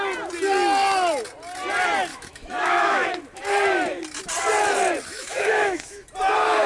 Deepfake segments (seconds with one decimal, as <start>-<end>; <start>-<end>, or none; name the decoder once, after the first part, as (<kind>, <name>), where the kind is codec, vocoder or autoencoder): 2.1-3.2 (autoencoder, DAC-VAE); 5.1-6.1